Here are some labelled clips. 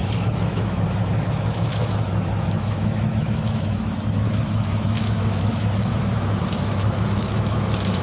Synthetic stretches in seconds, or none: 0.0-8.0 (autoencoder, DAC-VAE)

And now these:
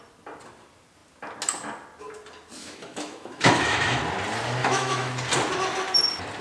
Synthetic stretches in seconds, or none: 2.6-4.0 (autoencoder, DAC-VAE); 4.6-5.1

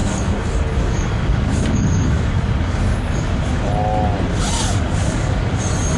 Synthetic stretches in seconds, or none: 0.0-3.6 (codec, DAC); 4.6-5.6

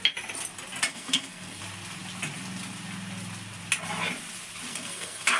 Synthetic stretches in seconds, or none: 0.9-1.6 (codec, SNAC); 4.7-5.4